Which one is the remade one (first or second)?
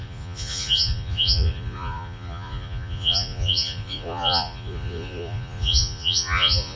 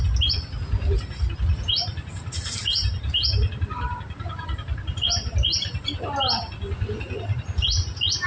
first